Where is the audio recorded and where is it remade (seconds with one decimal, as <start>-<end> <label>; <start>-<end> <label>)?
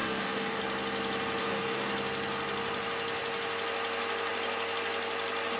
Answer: 0.0-0.6 remade; 0.6-1.4 recorded; 1.4-1.9 remade; 1.9-5.6 recorded